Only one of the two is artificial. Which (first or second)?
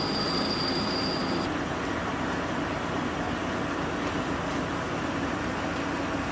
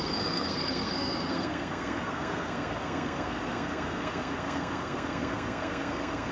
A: second